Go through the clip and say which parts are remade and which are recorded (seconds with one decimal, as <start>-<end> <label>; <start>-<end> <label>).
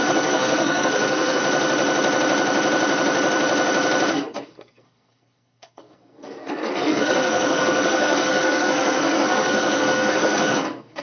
0.0-1.4 remade; 1.4-4.1 recorded; 4.1-11.0 remade